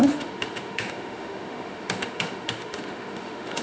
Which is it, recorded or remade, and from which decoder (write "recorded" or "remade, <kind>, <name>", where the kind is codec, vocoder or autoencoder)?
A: remade, autoencoder, DAC-VAE